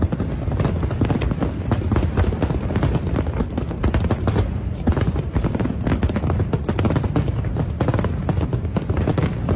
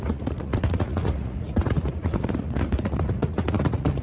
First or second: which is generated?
second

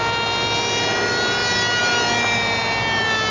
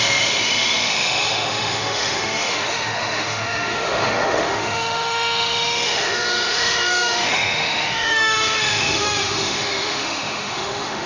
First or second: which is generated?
second